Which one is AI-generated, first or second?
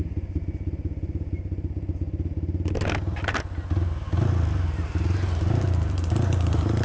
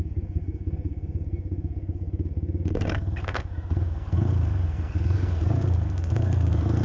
second